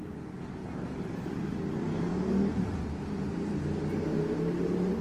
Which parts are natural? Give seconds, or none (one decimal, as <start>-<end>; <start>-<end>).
0.0-5.0